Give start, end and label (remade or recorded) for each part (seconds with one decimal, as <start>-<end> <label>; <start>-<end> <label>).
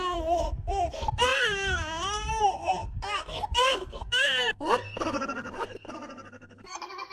0.0-7.1 remade